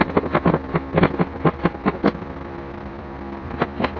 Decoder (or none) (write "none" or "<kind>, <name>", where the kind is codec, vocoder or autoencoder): vocoder, BigVGAN v2